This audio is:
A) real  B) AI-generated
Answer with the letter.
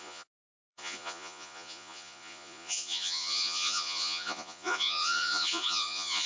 B